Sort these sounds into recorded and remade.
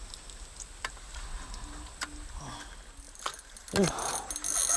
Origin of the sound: recorded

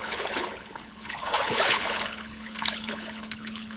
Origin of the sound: remade